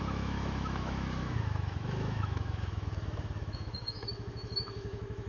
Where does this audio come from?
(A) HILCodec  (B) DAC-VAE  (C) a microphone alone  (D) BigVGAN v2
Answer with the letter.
B